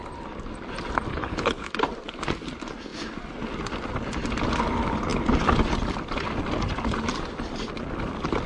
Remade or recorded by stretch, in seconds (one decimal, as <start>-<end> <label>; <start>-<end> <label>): 0.0-1.1 recorded; 1.1-1.7 remade; 1.7-8.5 recorded